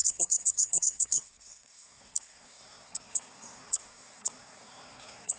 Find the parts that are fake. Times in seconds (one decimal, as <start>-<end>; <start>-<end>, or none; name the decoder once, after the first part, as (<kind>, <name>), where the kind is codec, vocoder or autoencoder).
0.0-5.4 (codec, SNAC)